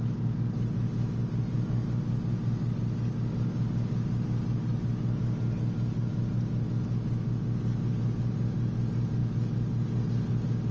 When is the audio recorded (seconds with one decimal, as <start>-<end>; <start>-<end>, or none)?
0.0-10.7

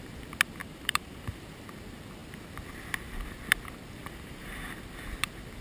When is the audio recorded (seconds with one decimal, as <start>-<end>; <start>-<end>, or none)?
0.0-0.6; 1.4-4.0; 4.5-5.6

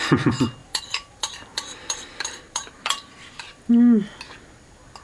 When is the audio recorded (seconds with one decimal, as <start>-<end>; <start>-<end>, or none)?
0.0-0.6; 3.6-5.0

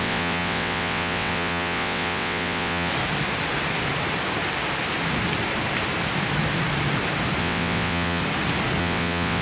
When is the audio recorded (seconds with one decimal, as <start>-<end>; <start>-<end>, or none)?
2.9-7.4; 8.2-8.8

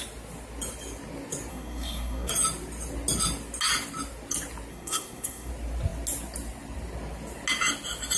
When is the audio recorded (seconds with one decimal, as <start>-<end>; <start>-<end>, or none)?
0.0-1.5; 2.3-4.7; 5.5-8.2